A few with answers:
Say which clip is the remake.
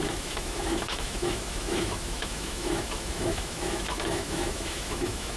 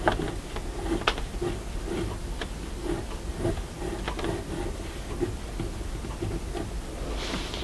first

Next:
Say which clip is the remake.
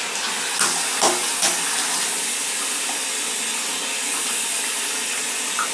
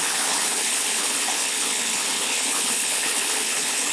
second